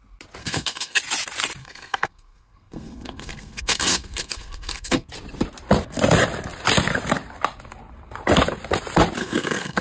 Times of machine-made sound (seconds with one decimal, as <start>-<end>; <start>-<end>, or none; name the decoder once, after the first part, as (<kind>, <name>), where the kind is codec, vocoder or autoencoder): 0.4-1.0 (codec, SNAC); 1.6-5.1; 9.2-9.8